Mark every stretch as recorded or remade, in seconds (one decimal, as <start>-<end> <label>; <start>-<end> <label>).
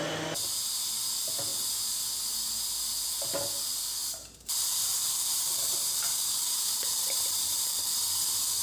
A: 0.0-4.0 recorded; 4.0-7.9 remade; 7.9-8.6 recorded